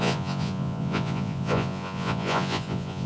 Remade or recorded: remade